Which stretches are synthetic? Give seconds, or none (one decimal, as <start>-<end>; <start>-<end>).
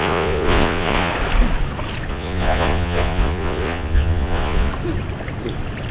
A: 0.0-1.1; 2.1-4.7